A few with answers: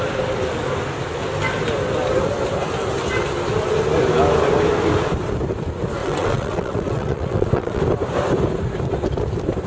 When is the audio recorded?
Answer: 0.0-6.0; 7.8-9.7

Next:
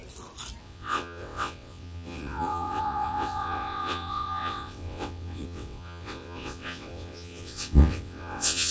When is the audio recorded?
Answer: 0.0-0.6

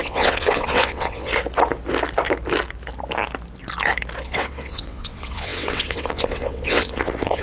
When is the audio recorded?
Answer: 1.3-4.2